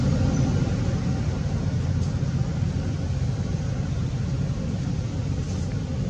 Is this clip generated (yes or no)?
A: no